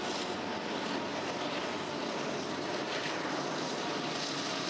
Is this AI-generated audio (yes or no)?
no